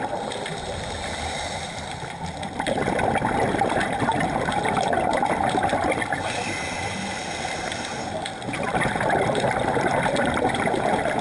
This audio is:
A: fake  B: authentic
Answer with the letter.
A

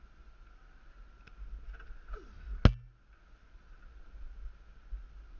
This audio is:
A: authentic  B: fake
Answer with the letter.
A